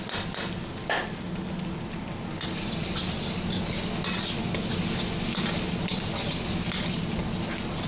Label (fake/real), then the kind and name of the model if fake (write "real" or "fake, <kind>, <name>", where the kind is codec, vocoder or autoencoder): real